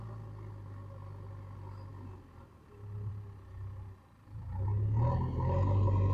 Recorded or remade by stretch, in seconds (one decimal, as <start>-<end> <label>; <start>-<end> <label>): 0.0-6.1 recorded